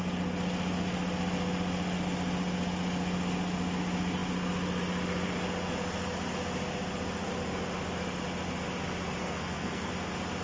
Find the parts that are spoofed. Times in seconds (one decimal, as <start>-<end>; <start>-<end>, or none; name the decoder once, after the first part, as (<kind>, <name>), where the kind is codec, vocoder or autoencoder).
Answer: 9.2-9.9 (codec, SNAC)